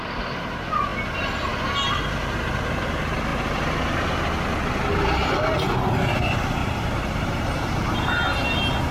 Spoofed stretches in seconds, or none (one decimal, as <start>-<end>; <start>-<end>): 3.3-4.6; 6.6-7.7